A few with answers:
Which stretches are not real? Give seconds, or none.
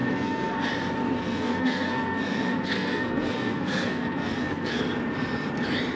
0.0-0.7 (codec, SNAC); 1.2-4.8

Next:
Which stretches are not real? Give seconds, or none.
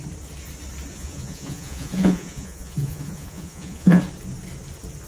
0.9-4.0 (vocoder, Vocos)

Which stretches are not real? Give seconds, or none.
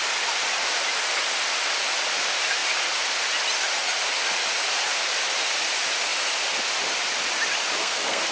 7.8-8.3 (codec, SNAC)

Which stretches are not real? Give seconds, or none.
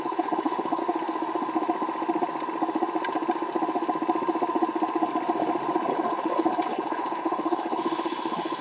0.0-0.8 (codec, HILCodec); 5.9-8.6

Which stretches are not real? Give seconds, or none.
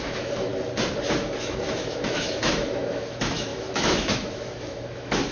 0.0-0.5 (autoencoder, DAC-VAE); 1.1-5.3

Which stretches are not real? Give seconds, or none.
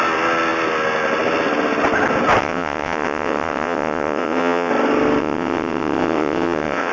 2.4-4.7 (vocoder, WaveNeXt); 5.2-6.9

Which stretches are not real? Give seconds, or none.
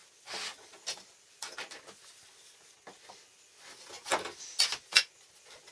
0.0-1.4 (vocoder, BigVGAN v2)